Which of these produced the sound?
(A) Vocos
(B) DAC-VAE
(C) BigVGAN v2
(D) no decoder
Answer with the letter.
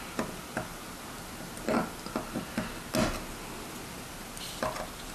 D